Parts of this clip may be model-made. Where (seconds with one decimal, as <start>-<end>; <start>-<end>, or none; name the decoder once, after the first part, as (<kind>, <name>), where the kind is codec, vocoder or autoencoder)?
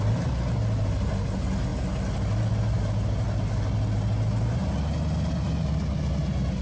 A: none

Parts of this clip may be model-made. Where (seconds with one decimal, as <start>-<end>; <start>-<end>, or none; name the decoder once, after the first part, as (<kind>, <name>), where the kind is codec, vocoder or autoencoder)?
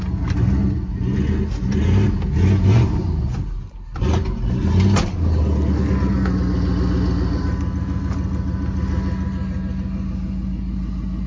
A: none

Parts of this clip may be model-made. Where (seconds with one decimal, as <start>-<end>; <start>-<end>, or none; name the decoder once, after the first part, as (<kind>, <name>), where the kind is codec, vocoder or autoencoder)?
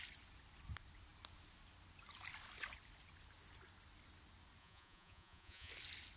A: 4.6-5.7 (vocoder, Vocos)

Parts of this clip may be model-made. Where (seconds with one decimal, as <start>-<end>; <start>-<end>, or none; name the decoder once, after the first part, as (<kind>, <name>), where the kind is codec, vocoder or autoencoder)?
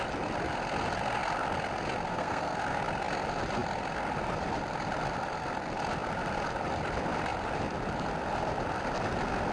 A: 2.1-2.8 (codec, SNAC)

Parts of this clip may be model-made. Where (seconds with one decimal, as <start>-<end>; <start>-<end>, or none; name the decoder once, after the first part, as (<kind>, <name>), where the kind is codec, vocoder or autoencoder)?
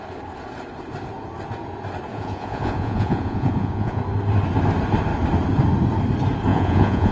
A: 2.1-4.0 (vocoder, Vocos); 6.5-7.1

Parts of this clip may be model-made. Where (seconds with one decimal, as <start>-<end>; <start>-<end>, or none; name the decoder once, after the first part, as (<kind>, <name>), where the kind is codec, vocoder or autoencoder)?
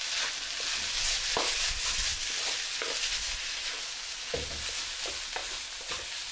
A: none